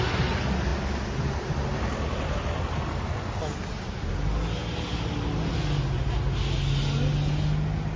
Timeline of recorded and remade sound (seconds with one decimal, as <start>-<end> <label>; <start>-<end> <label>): 0.0-8.0 recorded